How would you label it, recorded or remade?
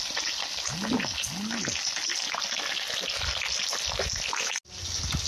recorded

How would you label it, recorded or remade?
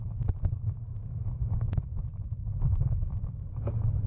remade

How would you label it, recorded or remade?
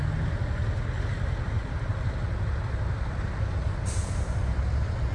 recorded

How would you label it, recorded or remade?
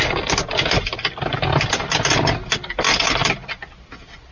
recorded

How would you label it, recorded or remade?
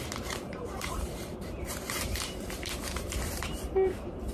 remade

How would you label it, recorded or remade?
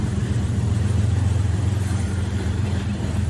remade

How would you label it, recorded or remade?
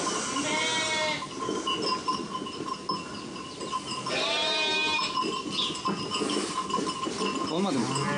recorded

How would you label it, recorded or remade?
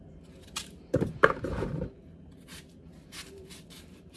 remade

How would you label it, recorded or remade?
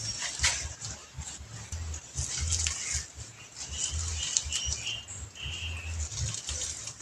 recorded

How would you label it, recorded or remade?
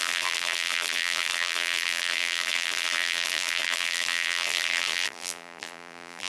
remade